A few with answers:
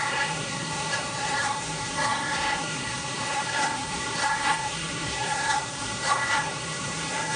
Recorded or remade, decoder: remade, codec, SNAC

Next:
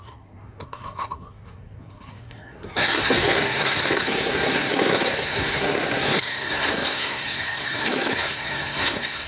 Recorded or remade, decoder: remade, codec, SNAC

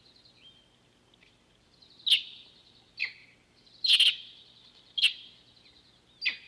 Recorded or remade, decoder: recorded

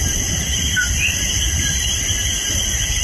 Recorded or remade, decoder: recorded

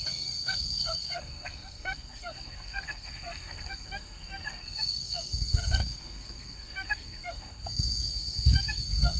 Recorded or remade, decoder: remade, codec, SNAC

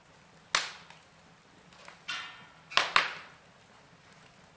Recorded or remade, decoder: recorded